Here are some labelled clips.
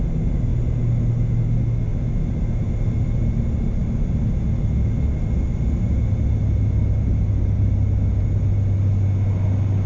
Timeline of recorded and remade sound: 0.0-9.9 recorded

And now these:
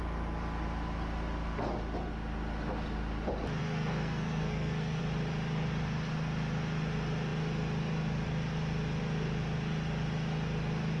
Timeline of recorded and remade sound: 0.0-3.6 recorded; 3.6-5.0 remade; 5.0-11.0 recorded